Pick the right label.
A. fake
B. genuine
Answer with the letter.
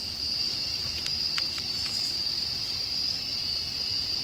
A